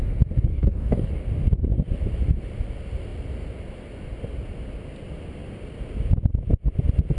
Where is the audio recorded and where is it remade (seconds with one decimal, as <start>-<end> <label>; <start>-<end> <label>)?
0.0-0.5 recorded; 0.5-1.1 remade; 1.1-7.2 recorded